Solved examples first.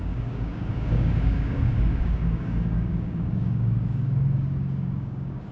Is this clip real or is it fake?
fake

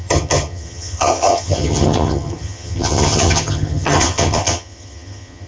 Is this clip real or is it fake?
fake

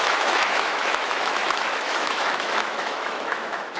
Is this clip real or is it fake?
fake